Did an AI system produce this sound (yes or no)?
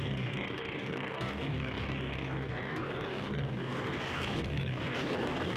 yes